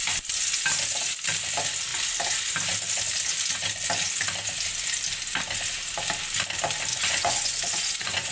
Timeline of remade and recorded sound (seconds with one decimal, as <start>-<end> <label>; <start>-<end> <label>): 0.0-6.9 recorded; 6.9-8.3 remade